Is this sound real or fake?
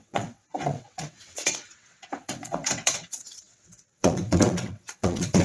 fake